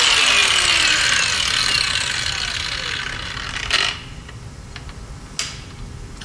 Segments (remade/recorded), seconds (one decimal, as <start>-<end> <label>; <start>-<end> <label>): 0.0-6.2 recorded

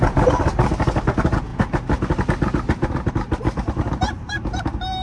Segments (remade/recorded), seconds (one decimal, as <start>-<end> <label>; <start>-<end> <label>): 0.0-5.0 recorded

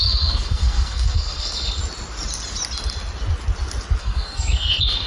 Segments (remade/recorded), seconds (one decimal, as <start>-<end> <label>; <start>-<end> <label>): 0.0-1.8 remade; 1.8-4.0 recorded; 4.0-5.1 remade

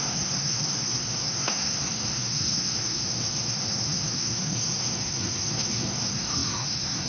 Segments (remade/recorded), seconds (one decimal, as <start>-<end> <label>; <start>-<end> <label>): 0.0-7.1 remade

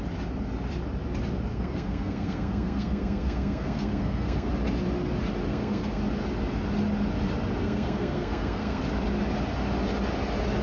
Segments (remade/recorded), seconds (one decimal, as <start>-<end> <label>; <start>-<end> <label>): 0.0-1.5 recorded; 1.5-4.5 remade; 4.5-5.5 recorded; 5.5-6.0 remade; 6.0-7.6 recorded; 7.6-8.8 remade; 8.8-10.6 recorded

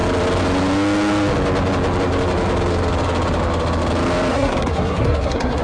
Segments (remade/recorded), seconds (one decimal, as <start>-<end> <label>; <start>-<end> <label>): 0.0-4.3 recorded; 4.3-5.6 remade

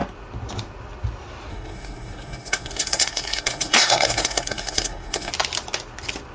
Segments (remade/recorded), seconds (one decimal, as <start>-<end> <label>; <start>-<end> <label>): 0.0-1.5 recorded; 1.5-5.3 remade; 5.3-6.3 recorded

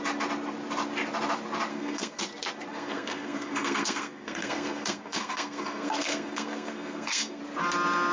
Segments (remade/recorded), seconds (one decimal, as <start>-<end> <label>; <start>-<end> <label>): 0.0-1.7 recorded; 1.7-2.2 remade; 2.2-2.7 recorded; 2.7-7.4 remade; 7.4-8.1 recorded